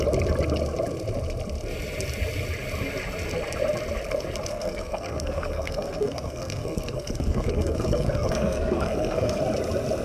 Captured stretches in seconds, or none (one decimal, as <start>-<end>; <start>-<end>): 0.0-4.5; 9.4-10.0